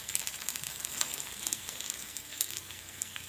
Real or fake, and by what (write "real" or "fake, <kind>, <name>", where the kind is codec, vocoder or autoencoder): fake, codec, SNAC